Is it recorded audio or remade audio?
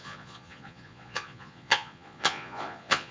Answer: remade